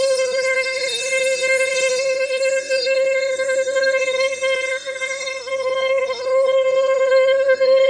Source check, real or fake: fake